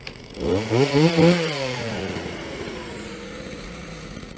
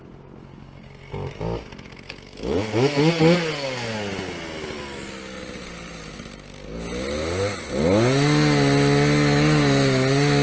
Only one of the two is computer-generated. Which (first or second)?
first